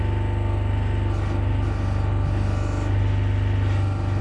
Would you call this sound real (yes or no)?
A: yes